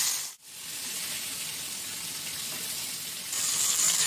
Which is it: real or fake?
real